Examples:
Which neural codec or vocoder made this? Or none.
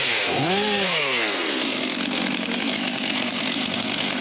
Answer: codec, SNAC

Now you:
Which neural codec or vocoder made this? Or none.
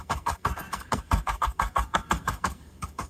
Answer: codec, SNAC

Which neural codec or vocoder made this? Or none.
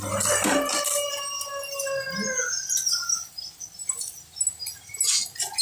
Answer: none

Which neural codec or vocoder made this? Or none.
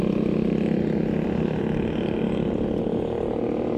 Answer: none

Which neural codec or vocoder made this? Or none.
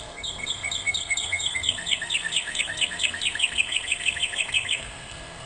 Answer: codec, SNAC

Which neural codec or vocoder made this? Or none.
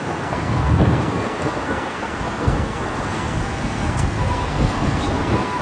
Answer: codec, SNAC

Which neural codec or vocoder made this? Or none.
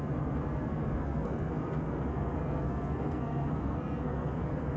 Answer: codec, SNAC